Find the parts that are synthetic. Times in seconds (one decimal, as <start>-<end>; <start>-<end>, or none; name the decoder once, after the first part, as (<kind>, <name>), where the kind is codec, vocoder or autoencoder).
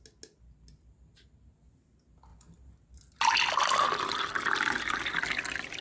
none